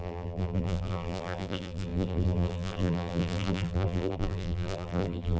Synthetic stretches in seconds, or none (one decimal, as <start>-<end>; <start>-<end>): 0.0-5.4